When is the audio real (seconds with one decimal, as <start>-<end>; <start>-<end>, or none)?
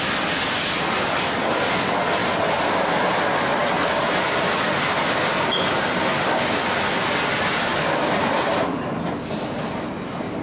0.0-10.4